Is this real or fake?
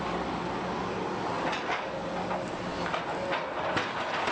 real